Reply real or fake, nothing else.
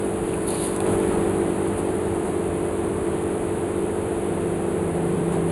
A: fake